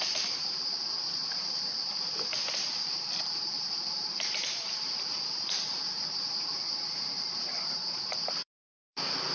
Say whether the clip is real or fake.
fake